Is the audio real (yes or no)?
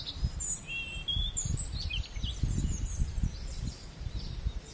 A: yes